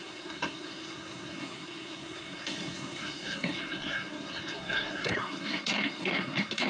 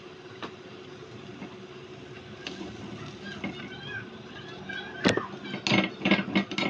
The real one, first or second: second